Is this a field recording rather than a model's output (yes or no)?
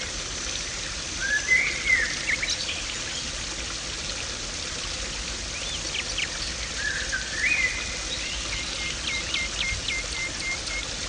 yes